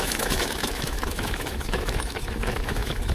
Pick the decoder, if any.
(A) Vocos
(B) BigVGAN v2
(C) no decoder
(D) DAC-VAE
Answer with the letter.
D